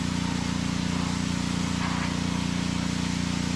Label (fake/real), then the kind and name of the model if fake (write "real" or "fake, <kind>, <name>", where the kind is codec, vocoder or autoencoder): real